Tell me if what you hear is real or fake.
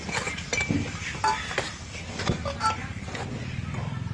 real